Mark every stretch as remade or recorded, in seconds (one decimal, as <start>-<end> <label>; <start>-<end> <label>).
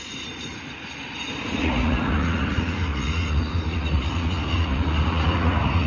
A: 0.0-0.5 remade; 0.5-1.5 recorded; 1.5-5.9 remade